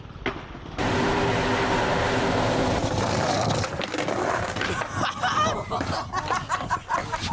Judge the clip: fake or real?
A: real